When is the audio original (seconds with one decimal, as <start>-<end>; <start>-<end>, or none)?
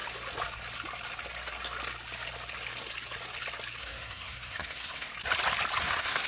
0.0-3.8; 5.1-5.8